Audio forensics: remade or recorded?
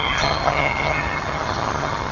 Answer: remade